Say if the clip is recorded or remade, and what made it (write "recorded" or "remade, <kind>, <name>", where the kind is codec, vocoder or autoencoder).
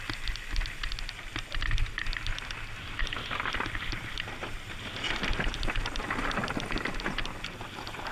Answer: recorded